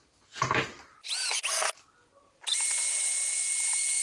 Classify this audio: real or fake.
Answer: real